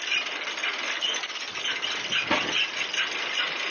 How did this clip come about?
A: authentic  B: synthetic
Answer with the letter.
A